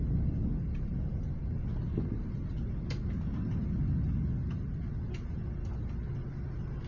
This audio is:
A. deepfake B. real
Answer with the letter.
B